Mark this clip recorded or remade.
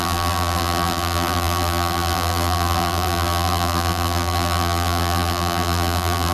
remade